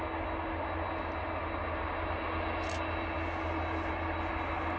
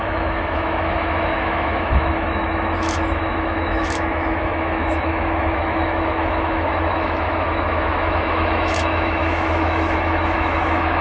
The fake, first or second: second